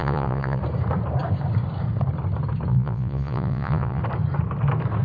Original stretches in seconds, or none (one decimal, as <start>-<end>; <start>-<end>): 0.6-2.7; 4.0-5.0